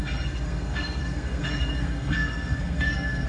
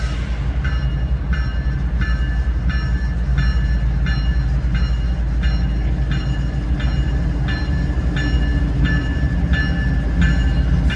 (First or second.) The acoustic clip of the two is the second